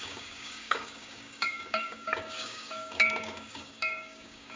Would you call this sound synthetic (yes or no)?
yes